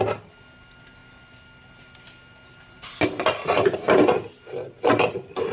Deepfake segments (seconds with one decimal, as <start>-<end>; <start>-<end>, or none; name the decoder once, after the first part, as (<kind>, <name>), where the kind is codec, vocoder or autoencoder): none